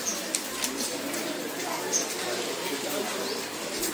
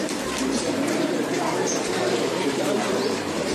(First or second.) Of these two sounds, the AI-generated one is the second